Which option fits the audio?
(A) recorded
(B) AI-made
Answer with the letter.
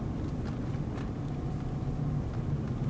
A